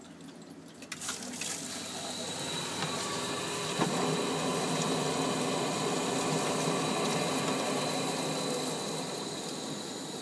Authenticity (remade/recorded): recorded